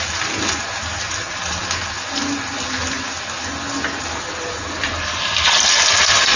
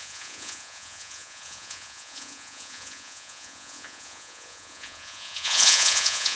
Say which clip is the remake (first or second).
second